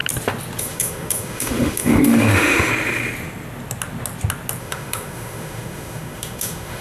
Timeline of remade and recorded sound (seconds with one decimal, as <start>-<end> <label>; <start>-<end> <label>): 0.0-0.6 recorded; 0.6-2.7 remade; 2.7-4.6 recorded; 4.6-6.8 remade